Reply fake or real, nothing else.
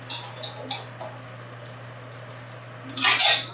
real